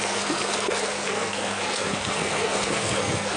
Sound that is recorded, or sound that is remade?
remade